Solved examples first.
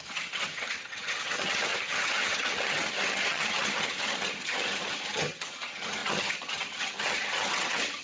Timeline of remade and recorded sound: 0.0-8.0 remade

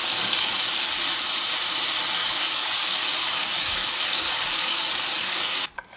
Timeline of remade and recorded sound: 0.0-0.9 remade; 0.9-2.2 recorded; 2.2-6.0 remade